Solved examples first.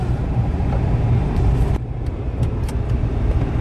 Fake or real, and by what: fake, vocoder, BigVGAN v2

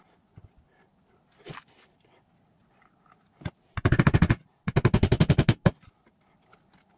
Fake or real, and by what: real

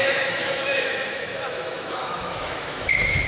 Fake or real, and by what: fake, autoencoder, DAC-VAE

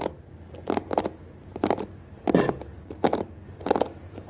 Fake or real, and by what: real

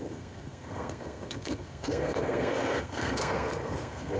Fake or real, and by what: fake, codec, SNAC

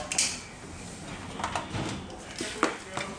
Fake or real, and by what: real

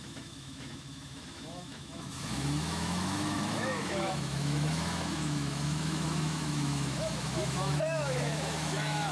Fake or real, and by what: fake, autoencoder, DAC-VAE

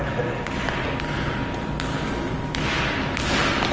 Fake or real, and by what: real